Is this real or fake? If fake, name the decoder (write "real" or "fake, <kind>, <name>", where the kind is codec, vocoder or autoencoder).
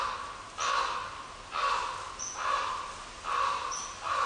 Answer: real